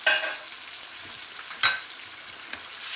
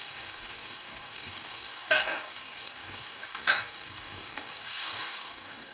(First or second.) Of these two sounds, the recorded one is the first